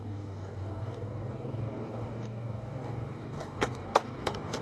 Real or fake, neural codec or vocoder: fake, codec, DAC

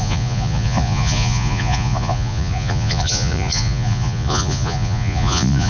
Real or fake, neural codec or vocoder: fake, vocoder, Vocos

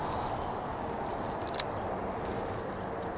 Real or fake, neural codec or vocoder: real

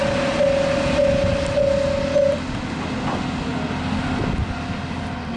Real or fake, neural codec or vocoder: real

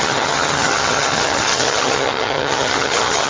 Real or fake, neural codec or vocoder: fake, vocoder, HiFi-GAN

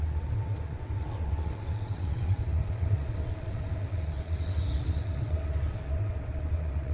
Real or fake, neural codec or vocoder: fake, vocoder, WaveNeXt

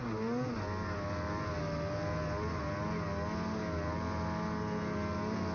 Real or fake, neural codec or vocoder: real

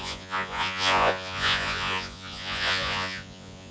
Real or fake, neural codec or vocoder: fake, vocoder, Vocos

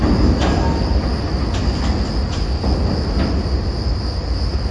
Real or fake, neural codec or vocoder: real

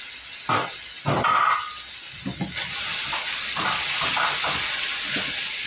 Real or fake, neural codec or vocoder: real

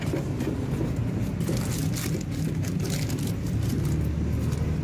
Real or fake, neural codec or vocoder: real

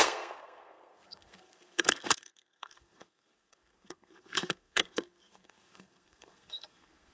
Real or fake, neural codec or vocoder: fake, codec, SNAC